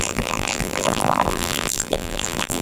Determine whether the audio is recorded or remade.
remade